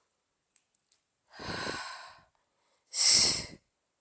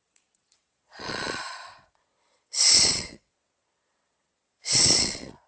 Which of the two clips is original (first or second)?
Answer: first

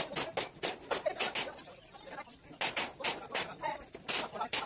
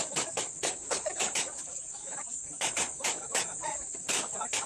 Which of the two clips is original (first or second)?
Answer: first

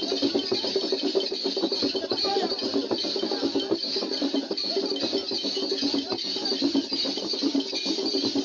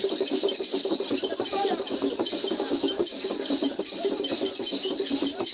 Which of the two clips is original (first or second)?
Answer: first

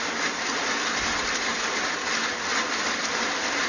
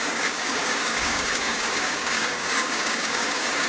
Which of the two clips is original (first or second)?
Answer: first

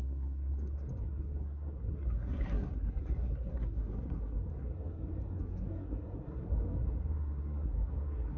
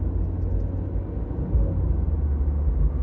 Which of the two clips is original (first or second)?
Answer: second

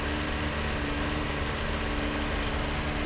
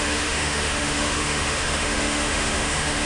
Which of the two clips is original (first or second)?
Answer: first